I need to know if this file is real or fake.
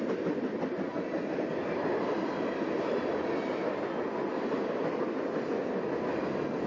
real